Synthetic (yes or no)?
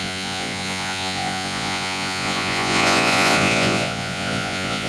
yes